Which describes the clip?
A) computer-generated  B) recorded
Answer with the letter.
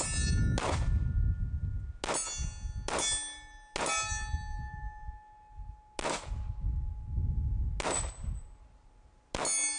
B